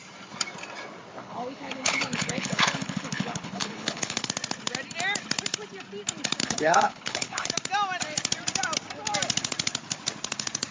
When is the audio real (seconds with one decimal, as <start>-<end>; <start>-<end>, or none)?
0.0-1.2; 4.3-6.4; 7.5-10.7

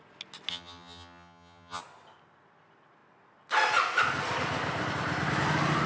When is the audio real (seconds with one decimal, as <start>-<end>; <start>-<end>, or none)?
0.0-0.5; 1.8-5.9